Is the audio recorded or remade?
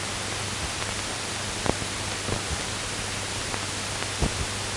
recorded